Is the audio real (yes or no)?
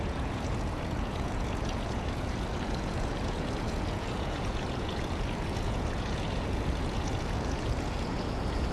no